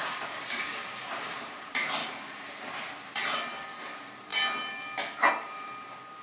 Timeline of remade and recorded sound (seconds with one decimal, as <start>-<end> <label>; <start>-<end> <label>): 0.0-2.0 remade; 2.0-2.9 recorded; 2.9-4.3 remade; 4.3-5.3 recorded; 5.3-5.7 remade; 5.7-6.2 recorded